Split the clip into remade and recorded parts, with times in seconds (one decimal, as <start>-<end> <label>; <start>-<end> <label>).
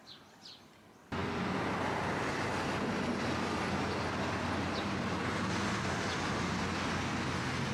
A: 0.0-7.7 recorded